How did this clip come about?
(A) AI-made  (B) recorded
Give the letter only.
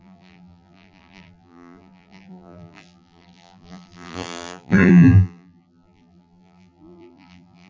A